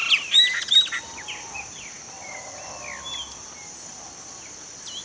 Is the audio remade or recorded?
recorded